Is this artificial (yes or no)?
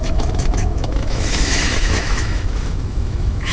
yes